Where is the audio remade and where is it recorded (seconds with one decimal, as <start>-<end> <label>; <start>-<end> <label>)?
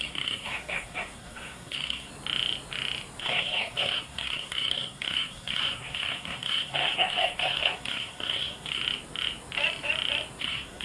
0.0-2.1 remade; 2.1-3.2 recorded; 3.2-8.8 remade; 8.8-10.4 recorded; 10.4-10.8 remade